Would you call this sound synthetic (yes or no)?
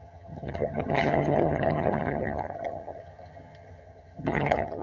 yes